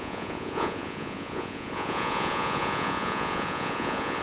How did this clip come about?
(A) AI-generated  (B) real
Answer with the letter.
A